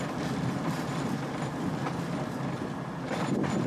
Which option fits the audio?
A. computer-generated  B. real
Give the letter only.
B